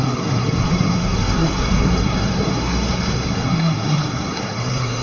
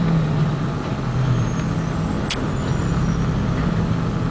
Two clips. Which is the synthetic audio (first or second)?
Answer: first